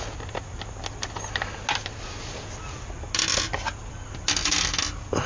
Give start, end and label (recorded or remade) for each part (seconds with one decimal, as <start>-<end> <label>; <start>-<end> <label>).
0.0-5.3 recorded